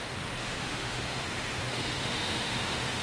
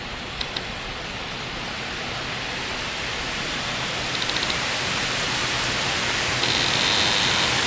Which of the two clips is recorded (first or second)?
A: second